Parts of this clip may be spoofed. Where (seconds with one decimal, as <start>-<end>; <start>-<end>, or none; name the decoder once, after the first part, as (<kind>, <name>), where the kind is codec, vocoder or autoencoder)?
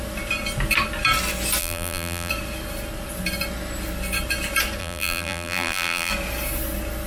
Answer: 1.6-2.3 (vocoder, BigVGAN v2); 4.8-6.1